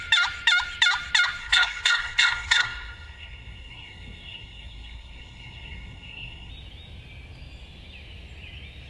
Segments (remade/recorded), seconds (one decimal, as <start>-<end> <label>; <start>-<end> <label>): 0.0-1.4 recorded; 1.4-6.5 remade; 6.5-8.9 recorded